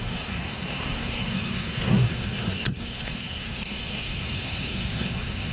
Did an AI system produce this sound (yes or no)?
yes